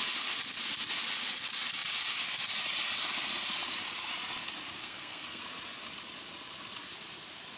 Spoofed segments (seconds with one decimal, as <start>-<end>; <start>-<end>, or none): 4.8-5.4